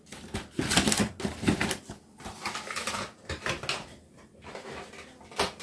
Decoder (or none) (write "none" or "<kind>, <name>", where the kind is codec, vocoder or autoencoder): none